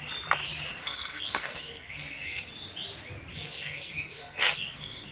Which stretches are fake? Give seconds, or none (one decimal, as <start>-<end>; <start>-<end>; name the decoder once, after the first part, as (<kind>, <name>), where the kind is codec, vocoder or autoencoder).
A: 0.7-2.5 (codec, SNAC); 3.3-5.1